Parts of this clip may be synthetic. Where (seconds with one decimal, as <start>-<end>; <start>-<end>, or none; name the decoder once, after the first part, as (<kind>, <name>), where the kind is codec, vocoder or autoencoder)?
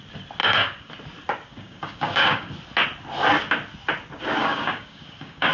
0.4-0.9 (codec, DAC); 1.5-2.5; 4.4-5.5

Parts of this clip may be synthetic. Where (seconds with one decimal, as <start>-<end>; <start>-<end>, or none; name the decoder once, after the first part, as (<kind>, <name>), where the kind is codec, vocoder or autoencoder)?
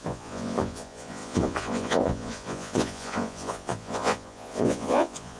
0.0-5.4 (vocoder, Vocos)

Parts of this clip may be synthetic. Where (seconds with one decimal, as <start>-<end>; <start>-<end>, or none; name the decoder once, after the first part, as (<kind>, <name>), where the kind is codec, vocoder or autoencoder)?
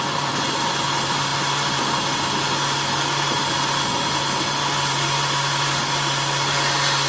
none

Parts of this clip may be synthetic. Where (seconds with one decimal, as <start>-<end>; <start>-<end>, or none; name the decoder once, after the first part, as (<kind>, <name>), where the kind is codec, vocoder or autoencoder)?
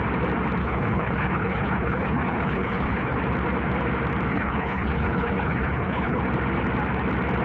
0.6-3.2 (codec, HILCodec); 4.3-6.2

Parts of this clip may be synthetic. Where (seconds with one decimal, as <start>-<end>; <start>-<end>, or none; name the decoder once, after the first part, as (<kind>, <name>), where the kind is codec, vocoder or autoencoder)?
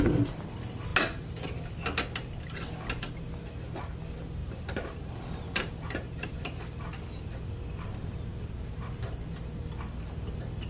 4.4-6.3 (vocoder, BigVGAN v2); 8.3-9.2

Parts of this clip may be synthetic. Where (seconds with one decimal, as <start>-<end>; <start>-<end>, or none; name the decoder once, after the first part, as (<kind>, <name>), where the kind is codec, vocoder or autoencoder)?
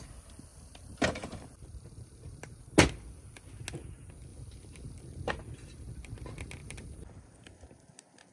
0.5-2.6 (vocoder, BigVGAN v2); 4.3-5.3; 6.6-7.5